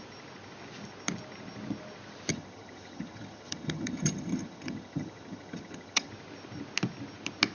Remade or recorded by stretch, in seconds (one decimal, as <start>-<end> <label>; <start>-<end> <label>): 0.0-2.3 recorded; 2.3-6.1 remade; 6.1-7.5 recorded